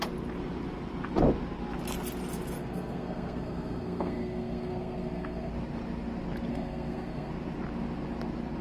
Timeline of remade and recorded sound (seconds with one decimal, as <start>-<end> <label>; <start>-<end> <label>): 0.0-2.6 recorded; 2.6-5.5 remade; 5.5-6.5 recorded; 6.5-7.3 remade; 7.3-8.6 recorded